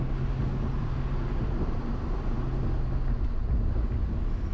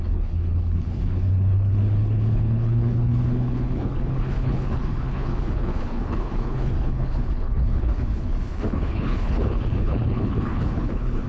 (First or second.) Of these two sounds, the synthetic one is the second